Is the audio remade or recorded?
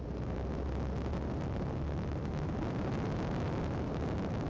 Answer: remade